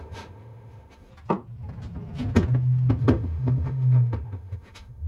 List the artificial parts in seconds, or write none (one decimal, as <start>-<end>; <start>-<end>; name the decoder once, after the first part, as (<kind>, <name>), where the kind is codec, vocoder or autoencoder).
0.0-1.1 (autoencoder, DAC-VAE); 3.0-5.1